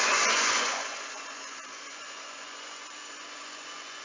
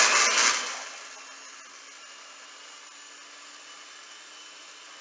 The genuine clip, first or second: second